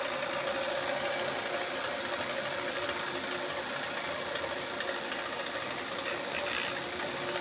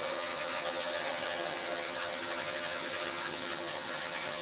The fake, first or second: second